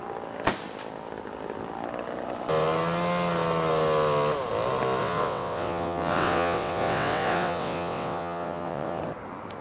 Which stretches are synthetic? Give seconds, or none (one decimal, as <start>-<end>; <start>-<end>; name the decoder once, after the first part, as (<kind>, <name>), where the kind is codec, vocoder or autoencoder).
5.0-9.0 (vocoder, WaveNeXt)

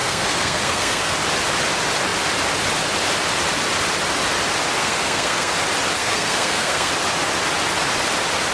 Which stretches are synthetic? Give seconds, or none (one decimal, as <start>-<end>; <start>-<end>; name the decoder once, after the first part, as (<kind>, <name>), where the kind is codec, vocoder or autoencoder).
0.0-1.1 (codec, SNAC); 4.8-5.5; 6.0-6.9

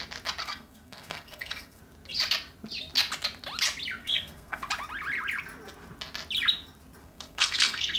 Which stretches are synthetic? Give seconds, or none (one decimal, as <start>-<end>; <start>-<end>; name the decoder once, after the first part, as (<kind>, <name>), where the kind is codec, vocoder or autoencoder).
0.4-1.8 (codec, SNAC); 4.0-4.7; 7.0-8.0

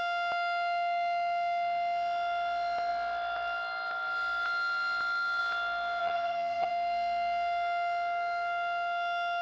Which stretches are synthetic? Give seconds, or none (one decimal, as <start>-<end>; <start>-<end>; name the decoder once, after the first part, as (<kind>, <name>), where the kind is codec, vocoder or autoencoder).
6.0-6.7 (vocoder, HiFi-GAN)

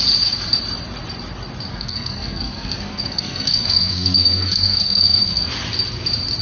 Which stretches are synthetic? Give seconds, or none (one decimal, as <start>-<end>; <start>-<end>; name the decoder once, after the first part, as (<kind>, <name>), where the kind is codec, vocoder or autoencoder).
1.7-5.5 (codec, SNAC)